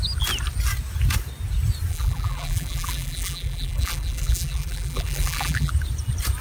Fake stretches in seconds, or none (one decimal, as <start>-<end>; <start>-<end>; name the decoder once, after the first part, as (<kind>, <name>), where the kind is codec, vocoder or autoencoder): 1.9-5.7 (vocoder, BigVGAN v2)